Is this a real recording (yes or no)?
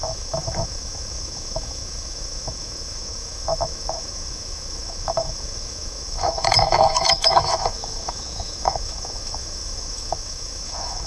no